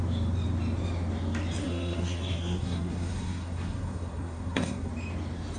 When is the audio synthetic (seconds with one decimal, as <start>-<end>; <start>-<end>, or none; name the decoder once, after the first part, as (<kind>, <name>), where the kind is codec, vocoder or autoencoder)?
1.6-4.9 (codec, SNAC)